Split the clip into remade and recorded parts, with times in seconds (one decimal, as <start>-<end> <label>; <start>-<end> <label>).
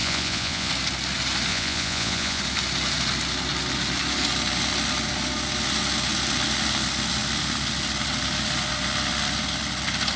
0.0-0.7 remade; 0.7-1.5 recorded; 1.5-2.4 remade; 2.4-10.2 recorded